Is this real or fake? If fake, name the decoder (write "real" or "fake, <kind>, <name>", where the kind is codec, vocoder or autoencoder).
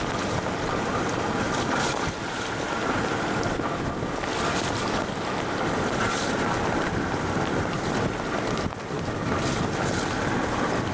real